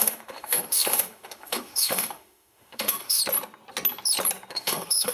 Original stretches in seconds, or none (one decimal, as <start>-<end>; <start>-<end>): 3.2-4.5